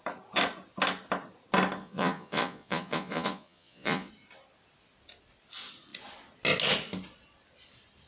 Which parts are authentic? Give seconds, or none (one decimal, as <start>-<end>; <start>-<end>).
0.0-1.8; 4.1-8.1